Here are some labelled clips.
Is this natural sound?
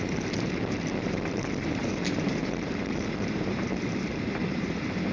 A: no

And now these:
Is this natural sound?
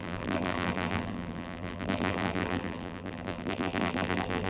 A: no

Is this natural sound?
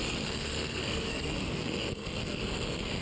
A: no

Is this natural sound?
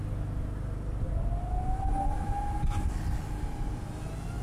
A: yes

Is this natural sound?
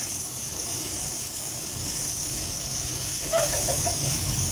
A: no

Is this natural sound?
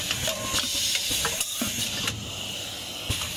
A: yes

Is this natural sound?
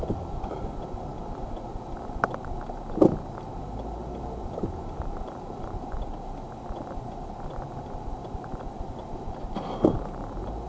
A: no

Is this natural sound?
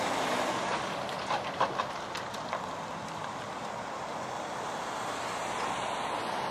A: yes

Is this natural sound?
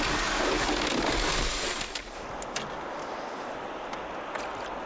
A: yes